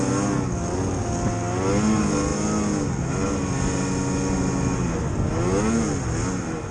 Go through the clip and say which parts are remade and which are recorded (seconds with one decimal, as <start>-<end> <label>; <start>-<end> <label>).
0.0-6.7 recorded